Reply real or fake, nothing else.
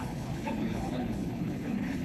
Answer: fake